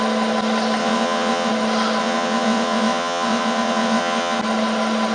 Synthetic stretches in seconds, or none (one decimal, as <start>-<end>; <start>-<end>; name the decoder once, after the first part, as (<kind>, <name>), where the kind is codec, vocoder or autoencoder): 0.8-1.5 (vocoder, WaveNeXt); 2.0-4.4